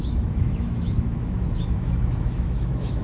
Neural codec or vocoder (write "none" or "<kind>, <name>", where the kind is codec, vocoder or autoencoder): autoencoder, DAC-VAE